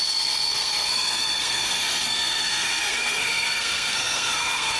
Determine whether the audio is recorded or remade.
remade